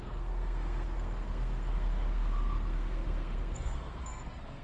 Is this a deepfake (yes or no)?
yes